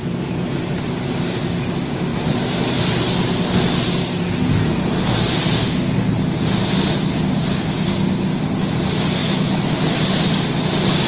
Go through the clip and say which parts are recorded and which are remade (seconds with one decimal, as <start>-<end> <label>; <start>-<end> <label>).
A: 0.0-9.2 recorded; 9.2-9.7 remade; 9.7-11.1 recorded